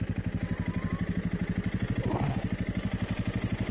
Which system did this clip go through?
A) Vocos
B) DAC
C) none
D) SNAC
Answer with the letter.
C